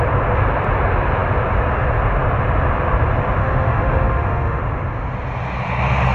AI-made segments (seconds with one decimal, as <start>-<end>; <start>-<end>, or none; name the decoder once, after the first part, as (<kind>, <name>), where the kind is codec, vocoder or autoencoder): 3.4-4.6 (autoencoder, DAC-VAE)